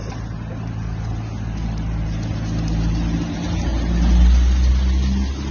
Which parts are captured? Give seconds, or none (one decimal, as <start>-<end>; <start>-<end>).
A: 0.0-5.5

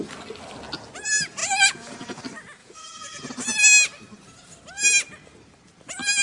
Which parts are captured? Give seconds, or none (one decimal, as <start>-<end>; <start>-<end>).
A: 0.0-1.4; 2.2-2.6; 3.3-6.2

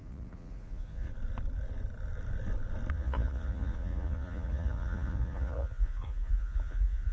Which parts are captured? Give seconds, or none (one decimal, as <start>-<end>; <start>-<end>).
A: 1.1-2.9